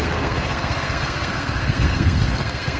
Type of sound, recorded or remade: remade